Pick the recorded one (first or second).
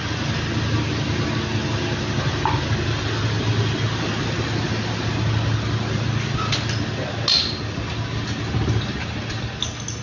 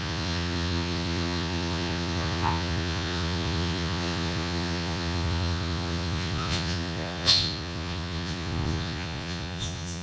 first